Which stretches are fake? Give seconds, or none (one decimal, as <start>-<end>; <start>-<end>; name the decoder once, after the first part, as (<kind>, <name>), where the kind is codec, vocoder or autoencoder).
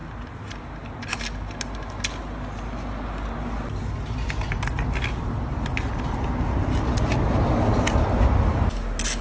none